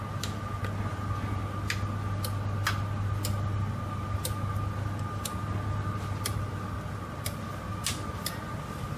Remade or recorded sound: recorded